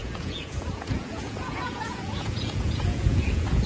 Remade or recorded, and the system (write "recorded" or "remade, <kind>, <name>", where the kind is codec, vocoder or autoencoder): remade, vocoder, Vocos